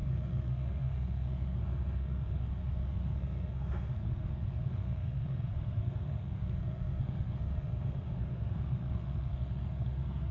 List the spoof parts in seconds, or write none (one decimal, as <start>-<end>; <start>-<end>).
0.0-10.3